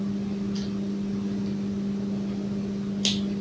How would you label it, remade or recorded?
recorded